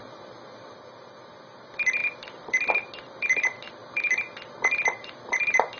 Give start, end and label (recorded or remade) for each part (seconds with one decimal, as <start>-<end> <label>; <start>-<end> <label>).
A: 0.0-5.8 remade